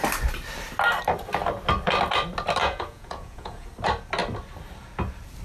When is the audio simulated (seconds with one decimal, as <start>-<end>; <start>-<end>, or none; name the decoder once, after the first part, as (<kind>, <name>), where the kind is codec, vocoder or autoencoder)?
2.6-3.7 (vocoder, Vocos)